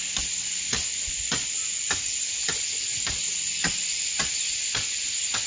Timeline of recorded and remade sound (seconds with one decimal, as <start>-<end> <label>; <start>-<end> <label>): 0.0-5.5 recorded